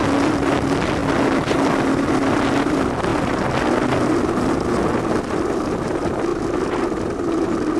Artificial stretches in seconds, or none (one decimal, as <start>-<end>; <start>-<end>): none